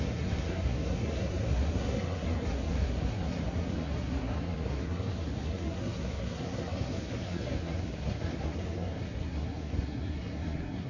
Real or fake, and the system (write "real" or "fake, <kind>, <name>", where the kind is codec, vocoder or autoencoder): fake, codec, SNAC